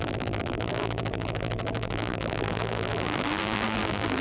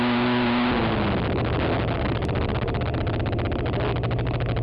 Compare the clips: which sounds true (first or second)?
second